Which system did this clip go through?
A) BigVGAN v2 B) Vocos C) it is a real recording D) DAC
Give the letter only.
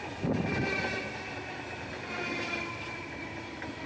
C